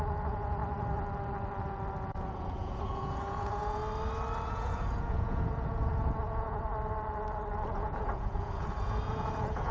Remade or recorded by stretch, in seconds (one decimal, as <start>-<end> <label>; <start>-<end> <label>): 0.0-0.6 remade; 0.6-2.0 recorded; 2.0-3.8 remade; 3.8-4.5 recorded; 4.5-6.7 remade; 6.7-7.7 recorded; 7.7-9.7 remade